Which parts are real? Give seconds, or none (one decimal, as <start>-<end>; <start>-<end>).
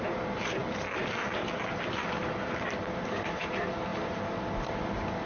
3.9-4.8